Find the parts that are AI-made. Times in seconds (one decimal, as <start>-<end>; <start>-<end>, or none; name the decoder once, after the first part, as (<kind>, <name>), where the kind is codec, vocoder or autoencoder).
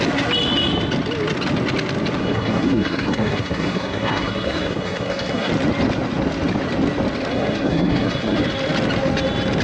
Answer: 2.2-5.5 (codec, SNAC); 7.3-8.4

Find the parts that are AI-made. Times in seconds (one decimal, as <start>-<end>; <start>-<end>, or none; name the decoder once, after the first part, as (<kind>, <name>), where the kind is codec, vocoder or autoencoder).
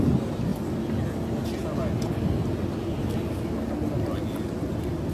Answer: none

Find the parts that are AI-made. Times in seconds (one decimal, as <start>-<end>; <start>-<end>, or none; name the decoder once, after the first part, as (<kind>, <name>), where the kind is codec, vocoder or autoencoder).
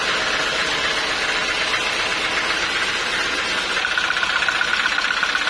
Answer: none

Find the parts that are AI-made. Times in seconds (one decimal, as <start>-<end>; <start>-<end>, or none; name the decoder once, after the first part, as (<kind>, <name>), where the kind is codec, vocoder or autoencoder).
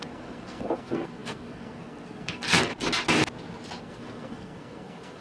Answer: 0.0-2.7 (codec, SNAC); 3.8-5.2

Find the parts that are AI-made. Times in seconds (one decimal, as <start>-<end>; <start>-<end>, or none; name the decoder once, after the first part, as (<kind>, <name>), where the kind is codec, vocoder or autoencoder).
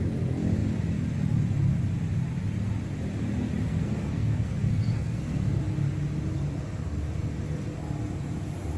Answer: 3.7-5.6 (codec, SNAC)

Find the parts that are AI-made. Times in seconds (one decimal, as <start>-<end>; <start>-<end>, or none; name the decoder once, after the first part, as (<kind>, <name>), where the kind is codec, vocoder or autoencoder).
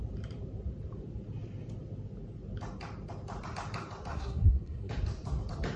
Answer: 4.1-4.9 (codec, SNAC)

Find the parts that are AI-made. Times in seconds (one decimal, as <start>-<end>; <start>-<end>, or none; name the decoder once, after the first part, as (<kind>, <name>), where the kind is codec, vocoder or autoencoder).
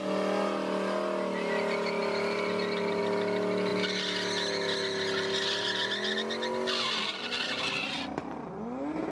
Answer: none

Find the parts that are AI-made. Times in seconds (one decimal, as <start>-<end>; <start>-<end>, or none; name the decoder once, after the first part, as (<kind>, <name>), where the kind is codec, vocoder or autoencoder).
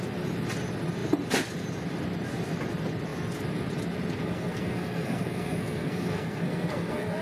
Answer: 4.2-7.2 (codec, SNAC)